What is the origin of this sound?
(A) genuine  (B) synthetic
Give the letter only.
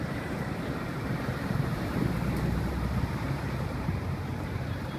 B